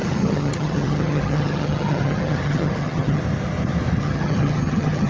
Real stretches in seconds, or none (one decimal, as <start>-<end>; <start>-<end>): 3.2-4.0